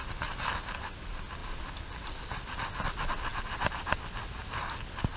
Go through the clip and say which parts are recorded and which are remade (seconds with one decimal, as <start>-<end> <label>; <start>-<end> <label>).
0.0-3.3 recorded; 3.3-3.9 remade; 3.9-4.4 recorded; 4.4-5.2 remade